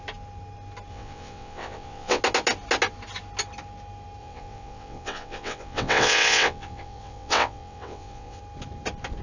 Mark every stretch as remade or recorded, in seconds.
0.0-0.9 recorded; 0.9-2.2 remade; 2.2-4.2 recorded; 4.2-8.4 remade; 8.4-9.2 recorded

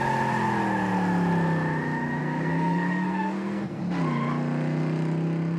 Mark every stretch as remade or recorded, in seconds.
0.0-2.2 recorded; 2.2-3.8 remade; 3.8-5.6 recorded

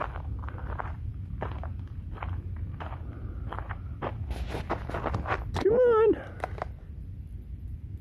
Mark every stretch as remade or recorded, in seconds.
0.0-1.1 recorded; 1.1-4.1 remade; 4.1-8.0 recorded

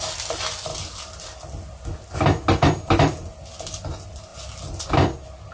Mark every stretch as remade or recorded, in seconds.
0.0-5.5 recorded